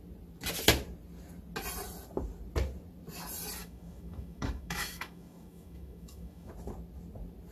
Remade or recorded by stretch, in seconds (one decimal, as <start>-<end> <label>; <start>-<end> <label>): 0.0-3.6 recorded; 3.6-6.5 remade; 6.5-7.5 recorded